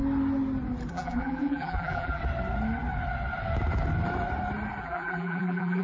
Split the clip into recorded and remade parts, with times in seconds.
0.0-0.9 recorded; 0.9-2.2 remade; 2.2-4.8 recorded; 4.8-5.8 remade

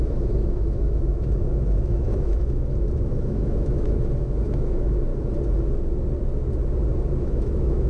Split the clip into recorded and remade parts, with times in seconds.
0.0-5.1 remade; 5.1-7.2 recorded; 7.2-7.9 remade

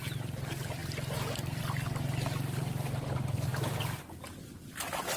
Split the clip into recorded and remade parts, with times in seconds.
0.0-5.2 recorded

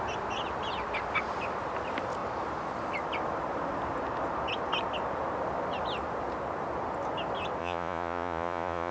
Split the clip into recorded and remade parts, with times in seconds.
0.0-7.6 recorded; 7.6-8.9 remade